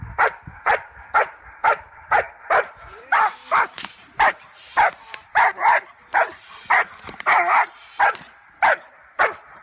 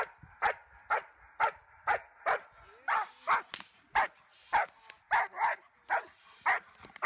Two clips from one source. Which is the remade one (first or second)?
first